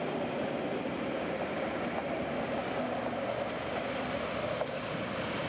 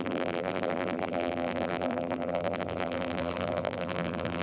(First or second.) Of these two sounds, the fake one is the second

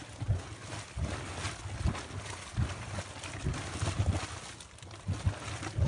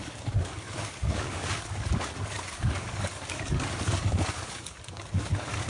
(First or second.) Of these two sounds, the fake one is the second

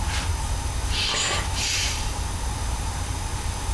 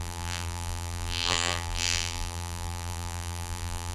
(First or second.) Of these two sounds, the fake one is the second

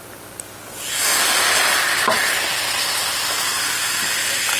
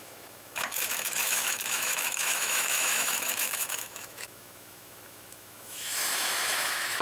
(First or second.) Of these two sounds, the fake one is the second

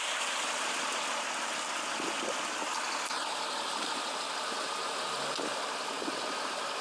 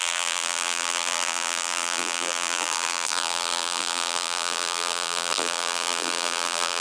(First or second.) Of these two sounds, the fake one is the second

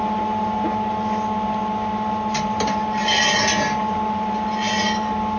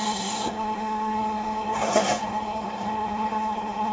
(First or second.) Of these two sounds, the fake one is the second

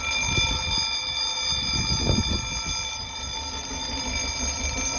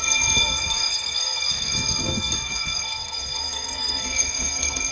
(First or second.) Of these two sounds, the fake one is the second